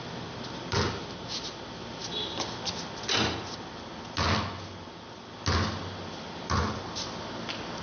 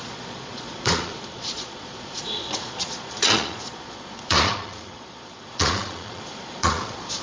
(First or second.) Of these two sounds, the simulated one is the second